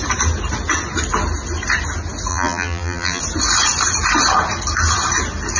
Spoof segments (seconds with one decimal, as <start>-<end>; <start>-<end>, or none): 2.3-3.2